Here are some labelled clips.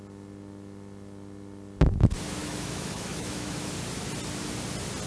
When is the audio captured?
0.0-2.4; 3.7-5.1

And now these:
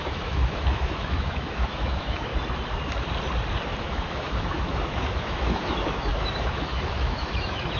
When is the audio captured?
2.3-3.8